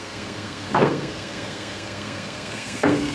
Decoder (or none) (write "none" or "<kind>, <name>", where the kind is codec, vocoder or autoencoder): codec, SNAC